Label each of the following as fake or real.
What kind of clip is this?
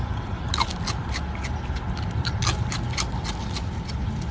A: real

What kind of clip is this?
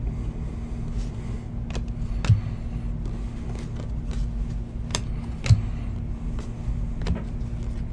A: real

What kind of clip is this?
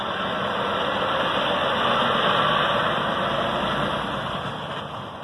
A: real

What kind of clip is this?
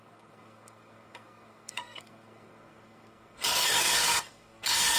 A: fake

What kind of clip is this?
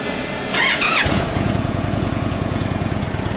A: fake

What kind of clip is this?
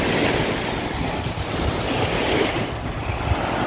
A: real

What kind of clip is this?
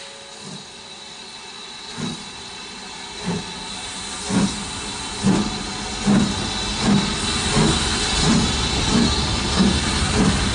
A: real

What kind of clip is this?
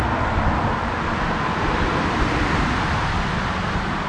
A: real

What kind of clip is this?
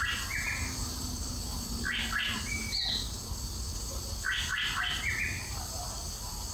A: real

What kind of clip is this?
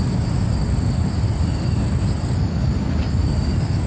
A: real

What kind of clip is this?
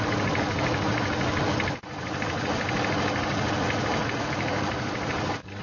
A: real